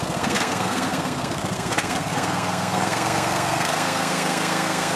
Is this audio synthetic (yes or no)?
yes